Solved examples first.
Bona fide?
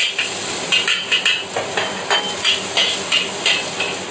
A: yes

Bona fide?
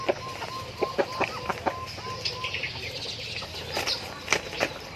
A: yes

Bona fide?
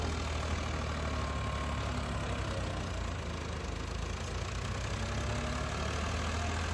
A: yes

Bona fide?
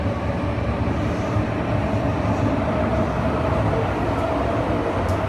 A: yes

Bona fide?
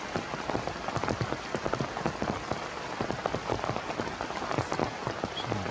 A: yes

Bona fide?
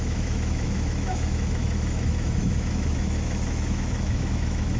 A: no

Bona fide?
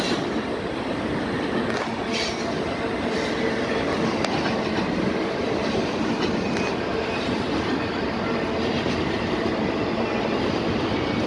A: yes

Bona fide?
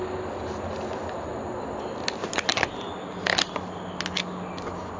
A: yes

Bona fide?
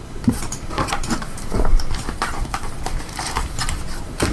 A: no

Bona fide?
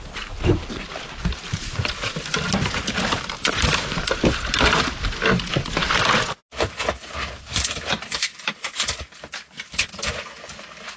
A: yes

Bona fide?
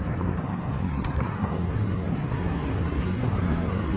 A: no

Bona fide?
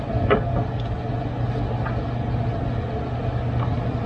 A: yes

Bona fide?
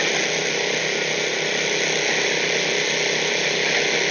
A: yes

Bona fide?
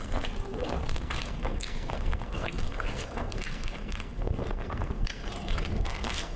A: no